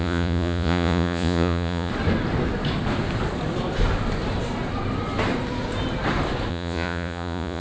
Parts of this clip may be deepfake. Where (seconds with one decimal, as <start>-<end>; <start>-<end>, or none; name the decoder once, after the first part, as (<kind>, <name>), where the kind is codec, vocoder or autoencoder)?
0.0-1.9 (vocoder, Vocos); 6.5-7.6